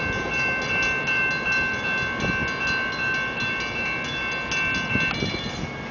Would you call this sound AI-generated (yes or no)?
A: no